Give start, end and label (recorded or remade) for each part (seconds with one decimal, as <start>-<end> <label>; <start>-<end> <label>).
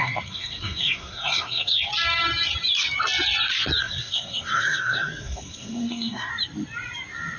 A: 0.0-1.9 remade; 1.9-3.8 recorded; 3.8-6.3 remade; 6.3-7.4 recorded